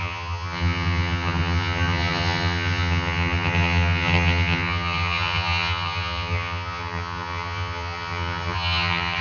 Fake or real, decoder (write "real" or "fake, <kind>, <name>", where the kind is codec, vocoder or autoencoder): fake, vocoder, HiFi-GAN